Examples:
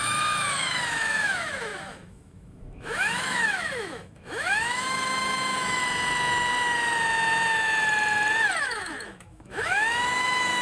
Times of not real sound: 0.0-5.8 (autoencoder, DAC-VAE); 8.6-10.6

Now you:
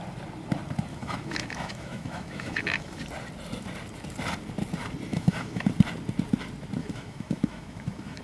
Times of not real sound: 0.9-3.0 (autoencoder, DAC-VAE); 5.1-5.7; 6.8-8.2